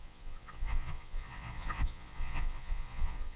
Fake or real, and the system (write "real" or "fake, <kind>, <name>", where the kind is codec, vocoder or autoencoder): fake, vocoder, Vocos